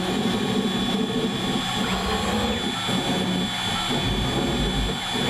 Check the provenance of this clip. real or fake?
real